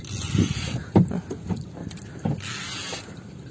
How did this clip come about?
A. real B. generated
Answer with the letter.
A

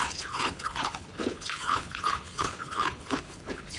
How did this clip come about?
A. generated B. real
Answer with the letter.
A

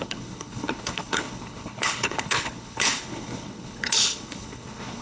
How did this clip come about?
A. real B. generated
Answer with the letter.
B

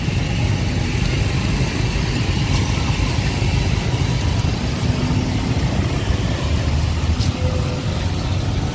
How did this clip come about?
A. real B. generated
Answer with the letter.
A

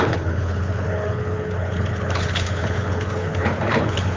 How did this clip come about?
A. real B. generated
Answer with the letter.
B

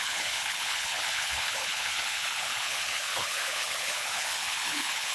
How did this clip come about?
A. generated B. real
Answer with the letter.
A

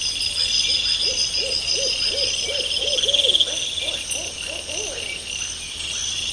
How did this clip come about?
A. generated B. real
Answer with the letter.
B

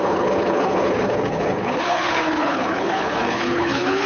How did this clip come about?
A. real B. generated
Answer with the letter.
B